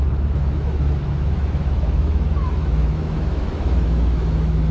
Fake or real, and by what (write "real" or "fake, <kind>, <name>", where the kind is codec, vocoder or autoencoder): fake, autoencoder, DAC-VAE